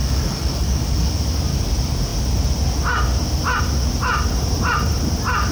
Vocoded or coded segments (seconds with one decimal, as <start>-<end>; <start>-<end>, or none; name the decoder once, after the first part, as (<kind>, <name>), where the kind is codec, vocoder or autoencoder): 0.0-1.2 (codec, DAC)